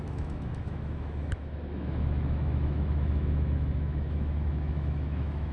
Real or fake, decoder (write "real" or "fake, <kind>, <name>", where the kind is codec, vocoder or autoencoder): fake, autoencoder, DAC-VAE